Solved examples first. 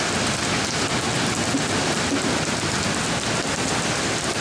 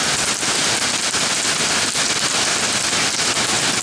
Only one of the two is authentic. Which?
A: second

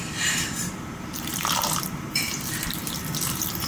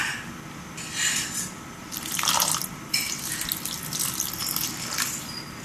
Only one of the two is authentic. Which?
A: second